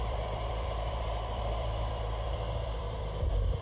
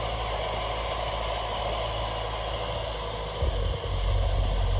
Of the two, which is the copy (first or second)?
first